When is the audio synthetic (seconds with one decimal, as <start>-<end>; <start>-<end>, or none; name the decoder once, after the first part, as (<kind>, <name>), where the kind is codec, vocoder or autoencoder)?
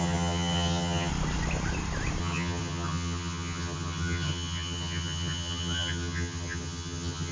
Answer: 0.0-1.1 (vocoder, HiFi-GAN); 2.2-7.3